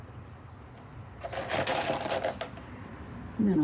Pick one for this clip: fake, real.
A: real